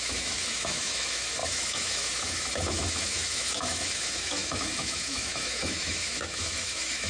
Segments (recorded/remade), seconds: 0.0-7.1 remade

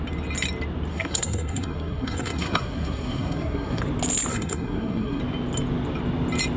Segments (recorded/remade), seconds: 0.0-0.9 recorded; 0.9-3.8 remade; 3.8-4.3 recorded; 4.3-5.2 remade; 5.2-6.6 recorded

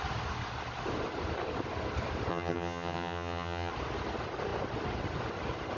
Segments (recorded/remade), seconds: 0.0-2.3 recorded; 2.3-3.7 remade; 3.7-5.8 recorded

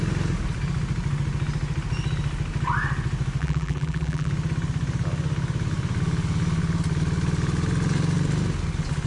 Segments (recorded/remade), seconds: 0.0-3.4 recorded; 3.4-4.3 remade; 4.3-9.1 recorded

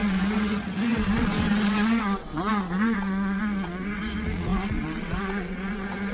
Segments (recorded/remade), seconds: 0.0-6.1 remade

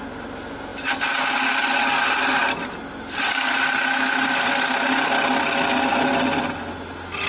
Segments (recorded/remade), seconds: 0.0-7.3 recorded

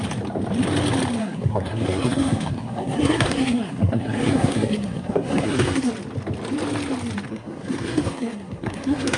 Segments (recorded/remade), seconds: 0.0-1.2 recorded; 1.2-5.9 remade; 5.9-7.3 recorded; 7.3-9.2 remade

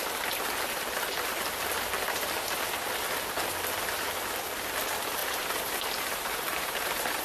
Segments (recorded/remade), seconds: 0.0-5.2 recorded; 5.2-7.2 remade